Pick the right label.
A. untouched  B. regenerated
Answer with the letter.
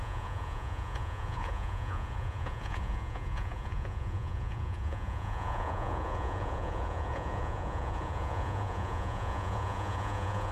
B